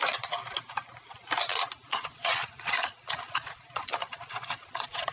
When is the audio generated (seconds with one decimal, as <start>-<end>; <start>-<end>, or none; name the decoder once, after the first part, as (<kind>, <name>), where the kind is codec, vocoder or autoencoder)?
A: 1.9-5.1 (vocoder, Vocos)